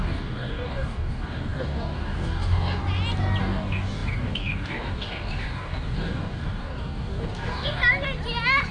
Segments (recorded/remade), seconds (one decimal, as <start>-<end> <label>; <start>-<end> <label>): 0.0-2.8 remade; 2.8-3.4 recorded; 3.4-7.8 remade; 7.8-8.7 recorded